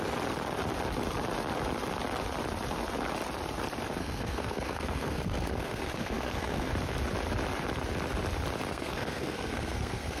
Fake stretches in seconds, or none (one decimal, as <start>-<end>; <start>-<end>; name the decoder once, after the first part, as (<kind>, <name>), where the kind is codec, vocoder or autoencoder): 4.0-6.7 (codec, SNAC); 8.7-10.2